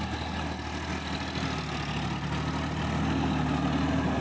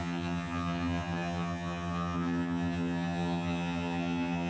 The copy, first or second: second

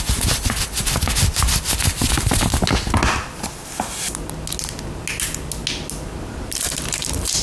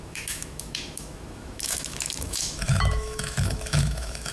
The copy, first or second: second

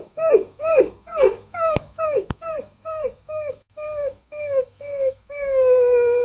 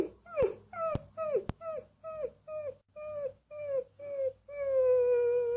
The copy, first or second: first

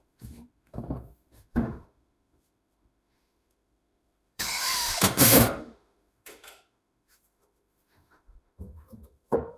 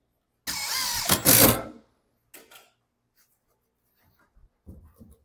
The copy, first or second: first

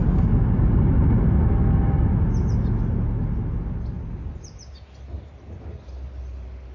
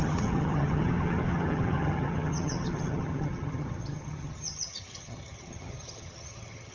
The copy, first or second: second